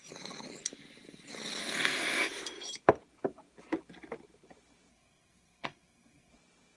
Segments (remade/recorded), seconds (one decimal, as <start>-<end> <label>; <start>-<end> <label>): 0.0-1.6 recorded; 1.6-2.3 remade; 2.3-4.9 recorded; 4.9-6.3 remade; 6.3-6.8 recorded